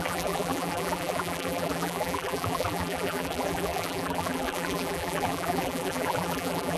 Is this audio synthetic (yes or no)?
yes